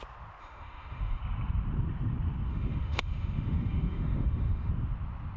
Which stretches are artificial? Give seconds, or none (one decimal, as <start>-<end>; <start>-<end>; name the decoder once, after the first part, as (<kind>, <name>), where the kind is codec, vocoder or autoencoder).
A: 0.4-1.2 (autoencoder, DAC-VAE); 2.5-4.7